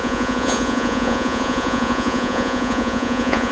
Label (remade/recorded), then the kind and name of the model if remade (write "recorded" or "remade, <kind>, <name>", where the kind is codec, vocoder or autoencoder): remade, vocoder, Vocos